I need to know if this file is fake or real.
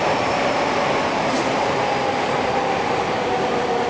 real